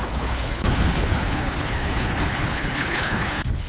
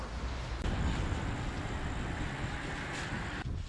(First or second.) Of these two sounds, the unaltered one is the second